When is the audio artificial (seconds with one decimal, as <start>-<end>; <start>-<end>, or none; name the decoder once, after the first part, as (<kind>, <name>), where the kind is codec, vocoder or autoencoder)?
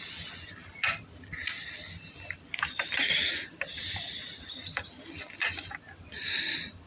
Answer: none